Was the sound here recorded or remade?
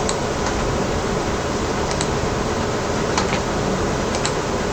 remade